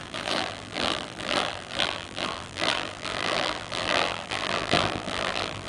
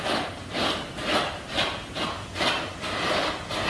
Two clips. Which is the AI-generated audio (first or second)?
first